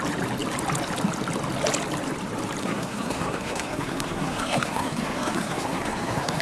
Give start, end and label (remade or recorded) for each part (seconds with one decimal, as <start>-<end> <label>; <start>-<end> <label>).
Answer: 0.0-2.6 recorded; 2.6-6.4 remade